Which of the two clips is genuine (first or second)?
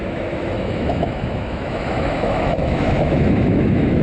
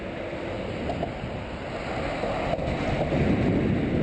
second